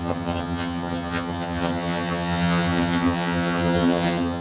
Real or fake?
fake